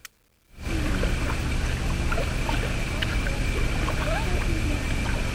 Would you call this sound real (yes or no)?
yes